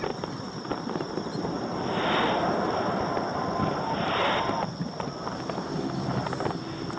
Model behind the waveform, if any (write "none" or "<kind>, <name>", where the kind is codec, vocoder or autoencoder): none